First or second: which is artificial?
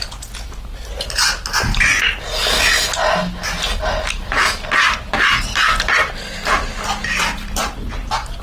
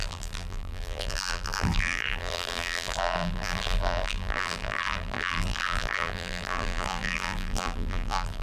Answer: second